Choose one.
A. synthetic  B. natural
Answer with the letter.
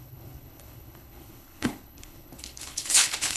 A